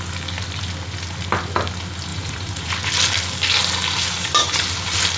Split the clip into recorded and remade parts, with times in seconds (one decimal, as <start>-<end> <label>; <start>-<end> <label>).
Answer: 0.0-2.1 recorded; 2.1-2.7 remade; 2.7-5.2 recorded